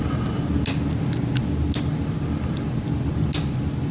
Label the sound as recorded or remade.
recorded